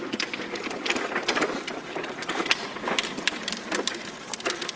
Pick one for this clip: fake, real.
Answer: real